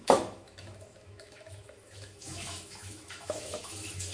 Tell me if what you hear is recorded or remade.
remade